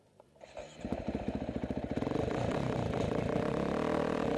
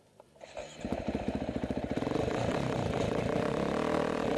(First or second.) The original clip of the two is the first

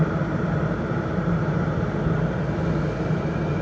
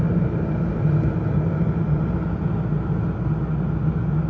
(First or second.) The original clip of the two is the second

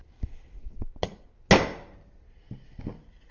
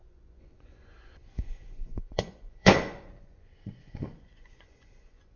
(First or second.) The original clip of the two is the first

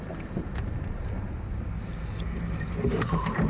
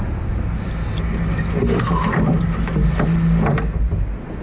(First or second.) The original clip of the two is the second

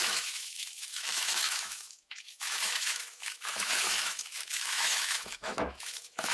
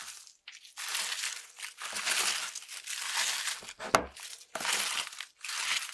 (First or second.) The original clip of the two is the second